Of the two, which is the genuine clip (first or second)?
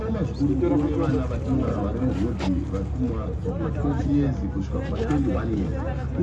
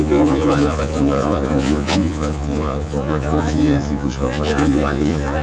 first